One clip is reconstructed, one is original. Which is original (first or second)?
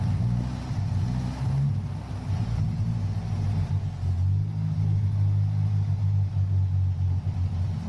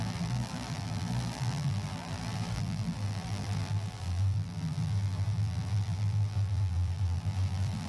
first